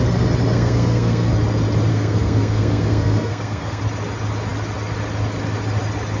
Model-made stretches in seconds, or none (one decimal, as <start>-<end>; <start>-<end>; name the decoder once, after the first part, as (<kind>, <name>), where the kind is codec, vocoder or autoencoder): 0.5-1.3 (codec, SNAC); 1.9-3.8